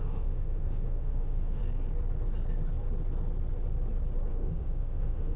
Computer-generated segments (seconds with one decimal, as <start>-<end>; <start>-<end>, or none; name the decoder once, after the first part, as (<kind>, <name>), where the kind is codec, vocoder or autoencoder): 0.0-1.6 (autoencoder, DAC-VAE); 4.3-5.4